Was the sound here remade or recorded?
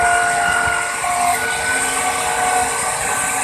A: remade